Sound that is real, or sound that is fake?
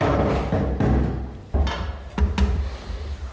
real